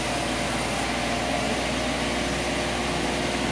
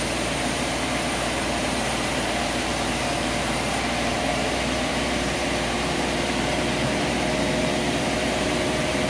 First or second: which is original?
first